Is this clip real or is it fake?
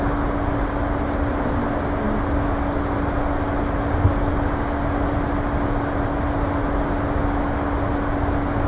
real